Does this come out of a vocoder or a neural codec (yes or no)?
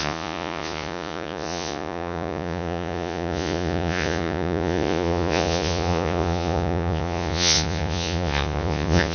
yes